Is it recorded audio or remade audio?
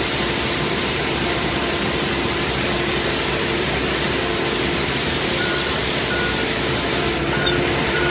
remade